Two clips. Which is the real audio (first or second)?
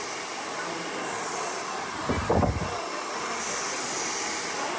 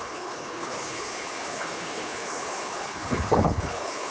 first